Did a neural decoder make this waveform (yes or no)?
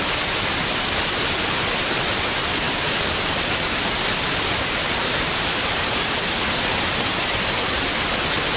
no